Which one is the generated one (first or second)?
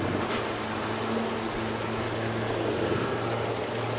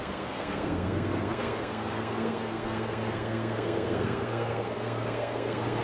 second